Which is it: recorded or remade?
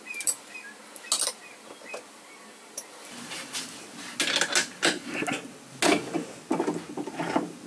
recorded